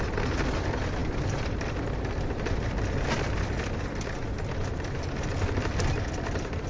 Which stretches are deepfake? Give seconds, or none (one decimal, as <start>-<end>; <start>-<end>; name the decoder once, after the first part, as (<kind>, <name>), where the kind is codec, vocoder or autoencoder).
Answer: none